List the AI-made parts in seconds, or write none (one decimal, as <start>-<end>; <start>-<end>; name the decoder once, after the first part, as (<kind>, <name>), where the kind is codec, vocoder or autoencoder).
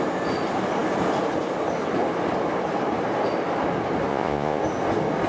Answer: 4.1-4.6 (vocoder, Vocos)